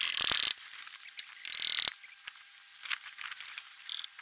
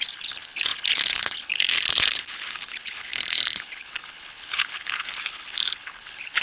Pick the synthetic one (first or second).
second